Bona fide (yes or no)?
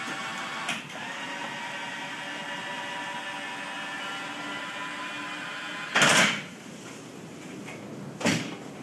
yes